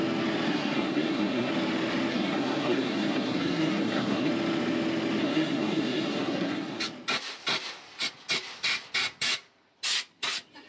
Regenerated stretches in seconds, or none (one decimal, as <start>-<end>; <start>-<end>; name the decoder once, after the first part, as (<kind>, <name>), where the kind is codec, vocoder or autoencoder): 0.5-1.5 (codec, SNAC); 2.1-4.3; 5.2-6.8

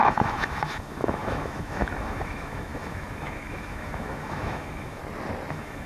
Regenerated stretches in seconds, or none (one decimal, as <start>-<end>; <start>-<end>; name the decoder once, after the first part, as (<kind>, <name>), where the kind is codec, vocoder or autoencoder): 0.0-5.0 (autoencoder, DAC-VAE); 5.5-5.9

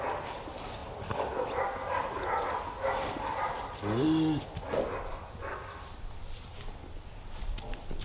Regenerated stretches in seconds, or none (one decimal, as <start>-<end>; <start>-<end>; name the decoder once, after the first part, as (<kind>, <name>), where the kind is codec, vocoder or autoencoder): none